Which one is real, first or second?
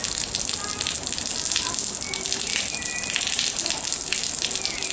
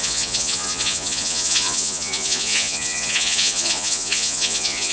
first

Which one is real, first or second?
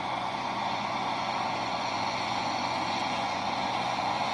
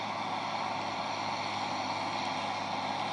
second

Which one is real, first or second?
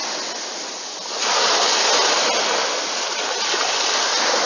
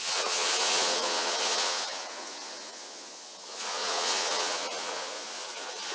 first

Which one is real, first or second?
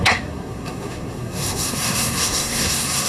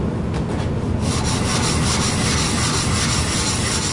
second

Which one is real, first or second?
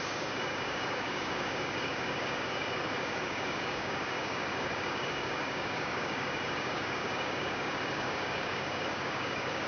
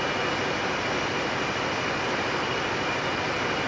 second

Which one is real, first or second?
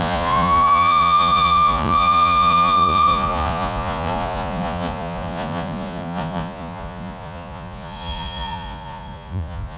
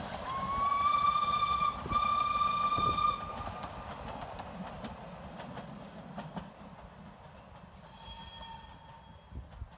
second